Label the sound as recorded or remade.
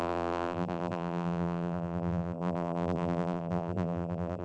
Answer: remade